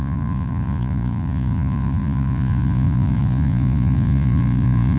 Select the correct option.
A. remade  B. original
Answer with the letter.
A